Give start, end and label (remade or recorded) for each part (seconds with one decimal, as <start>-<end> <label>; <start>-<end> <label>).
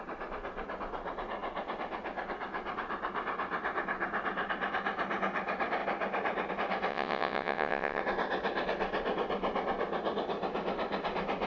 0.0-6.9 recorded; 6.9-8.0 remade; 8.0-11.5 recorded